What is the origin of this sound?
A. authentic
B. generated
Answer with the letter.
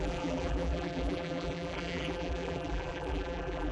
B